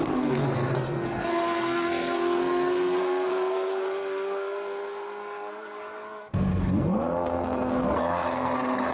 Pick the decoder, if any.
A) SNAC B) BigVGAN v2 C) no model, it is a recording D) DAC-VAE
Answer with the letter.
A